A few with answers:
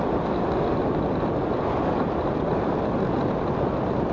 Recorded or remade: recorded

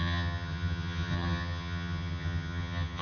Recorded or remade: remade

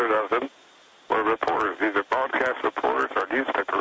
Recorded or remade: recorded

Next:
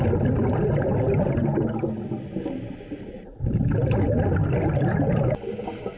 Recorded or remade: recorded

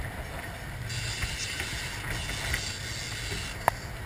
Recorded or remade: recorded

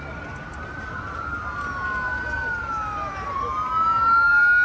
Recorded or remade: recorded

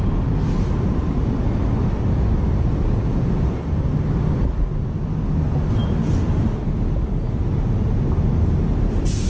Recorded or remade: recorded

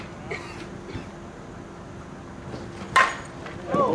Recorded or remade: recorded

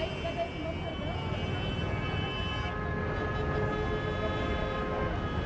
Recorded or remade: recorded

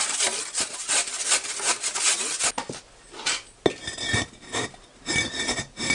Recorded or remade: recorded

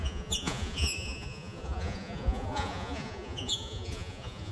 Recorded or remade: remade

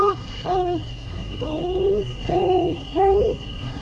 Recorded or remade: remade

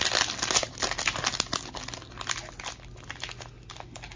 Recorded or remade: recorded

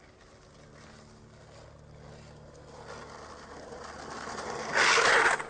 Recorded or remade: recorded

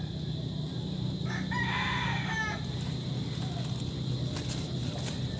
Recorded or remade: recorded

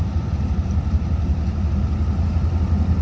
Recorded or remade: recorded